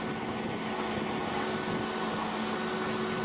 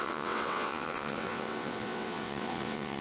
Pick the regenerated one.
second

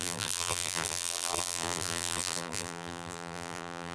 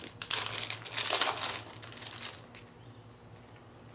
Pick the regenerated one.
first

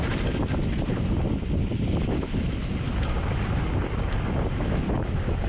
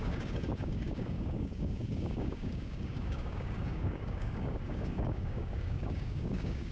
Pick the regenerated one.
second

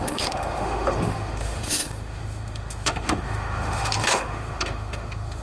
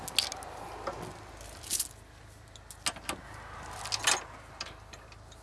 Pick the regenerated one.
first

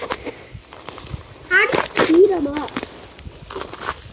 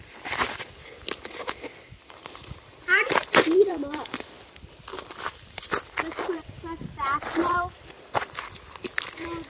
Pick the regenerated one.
second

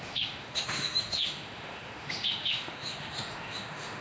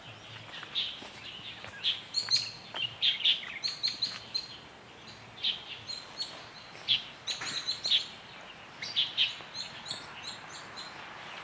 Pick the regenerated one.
first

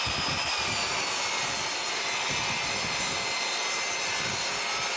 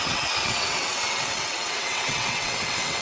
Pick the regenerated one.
second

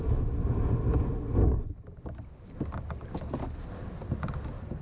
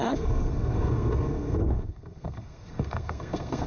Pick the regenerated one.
second